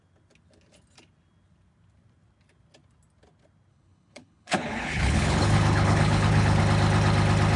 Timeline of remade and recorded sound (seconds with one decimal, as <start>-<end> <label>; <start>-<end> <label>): 0.0-3.7 recorded; 3.7-6.6 remade; 6.6-7.6 recorded